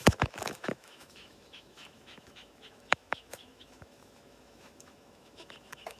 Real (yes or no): no